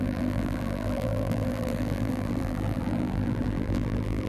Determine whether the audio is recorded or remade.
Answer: remade